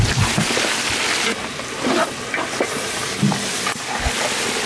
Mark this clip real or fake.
real